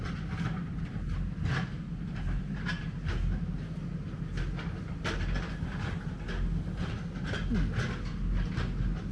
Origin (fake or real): real